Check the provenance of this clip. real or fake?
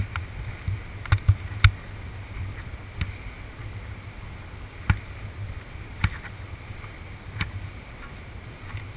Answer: real